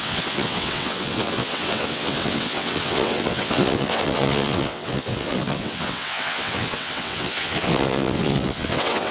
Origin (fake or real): fake